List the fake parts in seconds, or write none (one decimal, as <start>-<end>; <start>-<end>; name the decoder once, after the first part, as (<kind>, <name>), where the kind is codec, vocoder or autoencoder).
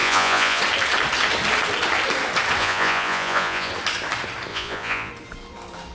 0.0-0.6 (vocoder, Vocos); 2.6-3.7; 4.5-5.1